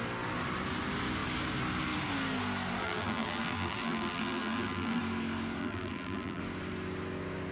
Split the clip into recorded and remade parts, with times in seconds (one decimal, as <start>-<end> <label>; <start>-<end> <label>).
0.0-2.8 recorded; 2.8-5.0 remade; 5.0-5.6 recorded; 5.6-6.4 remade; 6.4-7.5 recorded